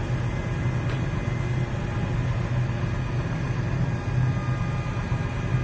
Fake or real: real